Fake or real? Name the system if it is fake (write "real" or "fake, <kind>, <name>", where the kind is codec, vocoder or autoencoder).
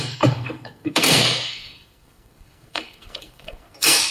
fake, codec, SNAC